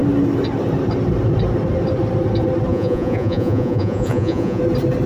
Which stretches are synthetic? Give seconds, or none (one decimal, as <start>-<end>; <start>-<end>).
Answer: 2.7-4.6